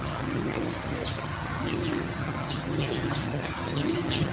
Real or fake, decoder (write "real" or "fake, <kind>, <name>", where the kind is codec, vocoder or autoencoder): fake, vocoder, HiFi-GAN